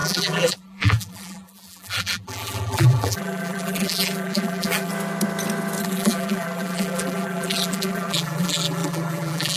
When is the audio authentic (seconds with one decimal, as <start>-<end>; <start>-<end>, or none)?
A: 4.9-5.8